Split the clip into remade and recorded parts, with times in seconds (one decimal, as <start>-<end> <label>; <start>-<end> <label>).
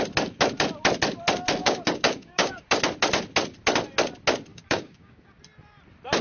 0.0-1.6 recorded; 1.6-2.6 remade; 2.6-4.5 recorded; 4.5-5.4 remade; 5.4-6.2 recorded